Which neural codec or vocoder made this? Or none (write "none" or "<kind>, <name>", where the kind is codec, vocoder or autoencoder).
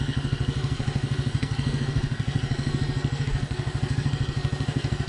codec, SNAC